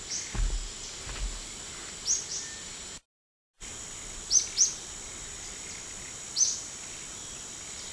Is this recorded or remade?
recorded